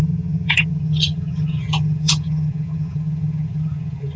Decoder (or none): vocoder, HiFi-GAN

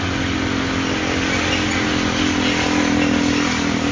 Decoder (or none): none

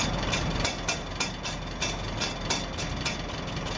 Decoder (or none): none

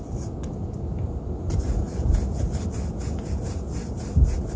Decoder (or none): none